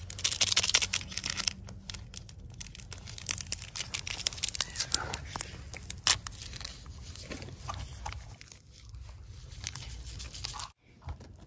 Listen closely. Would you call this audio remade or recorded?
recorded